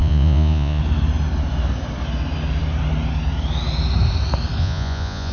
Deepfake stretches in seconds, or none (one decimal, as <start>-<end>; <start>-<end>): 0.0-0.8; 4.6-5.3